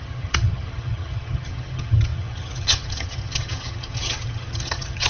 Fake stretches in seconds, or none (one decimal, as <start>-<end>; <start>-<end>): 0.0-5.1